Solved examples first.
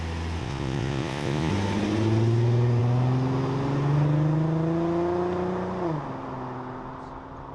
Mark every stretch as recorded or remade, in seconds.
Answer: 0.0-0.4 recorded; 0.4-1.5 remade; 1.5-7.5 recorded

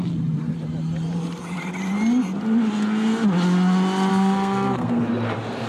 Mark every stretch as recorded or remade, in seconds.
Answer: 0.0-4.1 recorded; 4.1-5.0 remade; 5.0-5.7 recorded

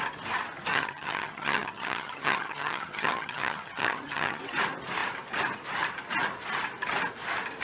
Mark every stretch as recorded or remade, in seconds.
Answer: 0.0-0.7 recorded; 0.7-4.4 remade; 4.4-7.6 recorded

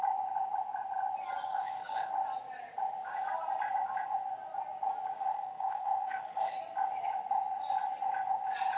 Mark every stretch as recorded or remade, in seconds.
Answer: 0.0-1.5 recorded; 1.5-2.1 remade; 2.1-5.3 recorded; 5.3-6.6 remade; 6.6-8.8 recorded

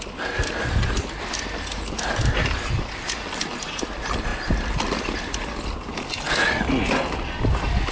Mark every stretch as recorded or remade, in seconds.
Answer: 0.0-7.9 recorded